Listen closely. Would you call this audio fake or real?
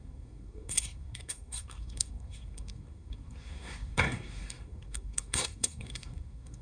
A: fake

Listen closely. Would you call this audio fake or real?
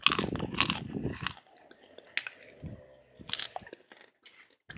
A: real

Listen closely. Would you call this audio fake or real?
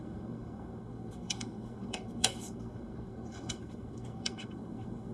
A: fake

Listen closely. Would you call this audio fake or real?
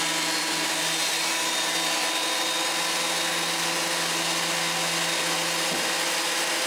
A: real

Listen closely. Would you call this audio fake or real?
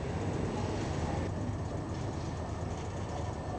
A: real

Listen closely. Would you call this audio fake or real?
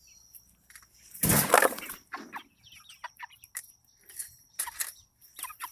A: real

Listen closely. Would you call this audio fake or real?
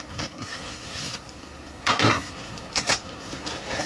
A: fake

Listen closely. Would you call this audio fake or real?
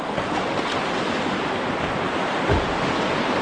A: real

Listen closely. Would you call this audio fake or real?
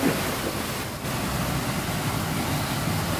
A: real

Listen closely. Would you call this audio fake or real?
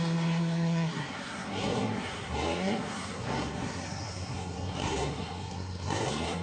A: fake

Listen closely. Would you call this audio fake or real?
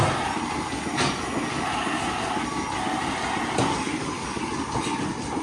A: real